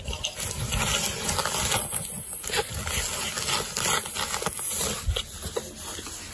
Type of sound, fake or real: real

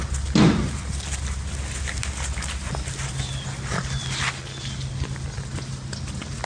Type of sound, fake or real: real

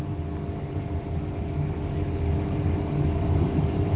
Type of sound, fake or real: real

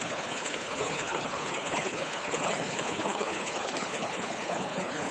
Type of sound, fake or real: fake